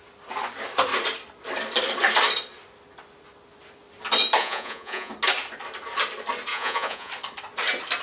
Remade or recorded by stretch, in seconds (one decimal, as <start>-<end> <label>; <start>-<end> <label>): 0.0-4.4 recorded; 4.4-5.1 remade; 5.1-6.5 recorded; 6.5-7.1 remade; 7.1-8.0 recorded

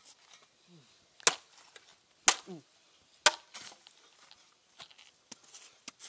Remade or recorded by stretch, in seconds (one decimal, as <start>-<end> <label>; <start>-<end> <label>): 0.0-6.1 recorded